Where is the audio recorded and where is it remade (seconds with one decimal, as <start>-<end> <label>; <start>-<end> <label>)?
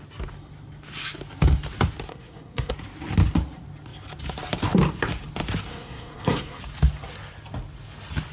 0.0-2.1 recorded; 2.1-2.7 remade; 2.7-5.7 recorded; 5.7-6.6 remade; 6.6-8.3 recorded